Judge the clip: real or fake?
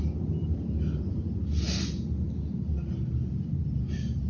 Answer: real